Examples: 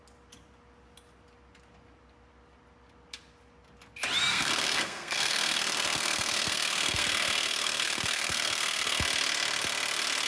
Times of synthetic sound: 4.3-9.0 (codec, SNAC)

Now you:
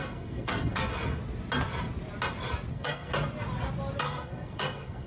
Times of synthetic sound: 0.0-0.9 (codec, SNAC); 2.7-3.1; 4.0-5.1

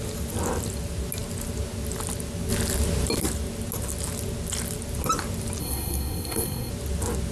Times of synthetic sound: 5.6-6.7 (codec, SNAC)

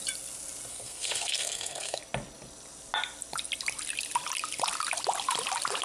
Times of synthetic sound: 0.7-2.0 (codec, SNAC)